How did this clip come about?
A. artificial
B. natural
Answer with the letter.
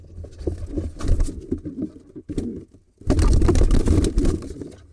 B